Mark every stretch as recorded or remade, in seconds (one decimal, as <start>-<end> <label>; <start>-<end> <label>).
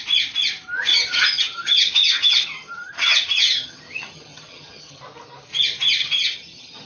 0.0-0.9 recorded; 0.9-5.0 remade; 5.0-6.0 recorded; 6.0-6.9 remade